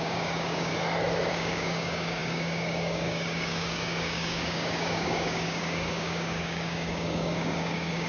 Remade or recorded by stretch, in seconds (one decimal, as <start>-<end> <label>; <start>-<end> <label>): 0.0-0.7 remade; 0.7-1.3 recorded; 1.3-8.1 remade